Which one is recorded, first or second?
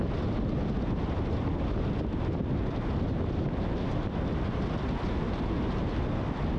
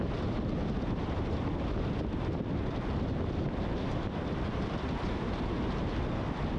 first